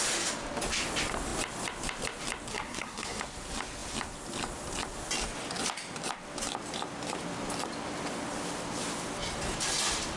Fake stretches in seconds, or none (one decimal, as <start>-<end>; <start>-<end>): 2.5-3.2